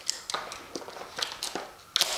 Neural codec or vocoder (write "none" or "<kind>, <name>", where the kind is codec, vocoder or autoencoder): none